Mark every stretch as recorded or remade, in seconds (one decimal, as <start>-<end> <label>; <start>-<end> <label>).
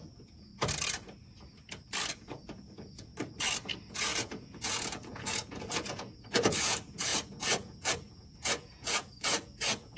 0.0-0.5 remade; 0.5-2.1 recorded; 2.1-3.1 remade; 3.1-3.9 recorded; 3.9-10.0 remade